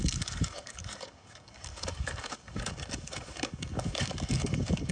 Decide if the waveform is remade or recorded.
remade